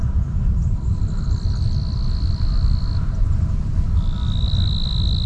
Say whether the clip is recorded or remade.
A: recorded